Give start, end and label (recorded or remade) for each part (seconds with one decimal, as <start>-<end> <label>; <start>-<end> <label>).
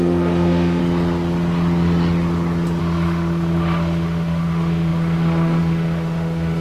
0.0-0.8 remade; 0.8-2.8 recorded; 2.8-6.6 remade